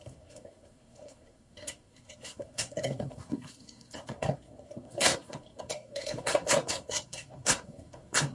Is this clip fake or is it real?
fake